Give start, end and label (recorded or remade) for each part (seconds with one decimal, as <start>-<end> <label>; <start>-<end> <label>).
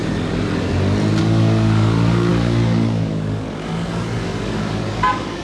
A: 0.0-1.2 recorded; 1.2-5.4 remade